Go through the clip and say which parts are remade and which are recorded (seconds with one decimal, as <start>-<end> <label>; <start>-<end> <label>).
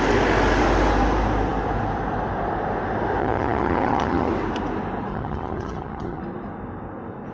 0.0-3.2 recorded; 3.2-4.3 remade; 4.3-5.1 recorded; 5.1-6.2 remade; 6.2-7.3 recorded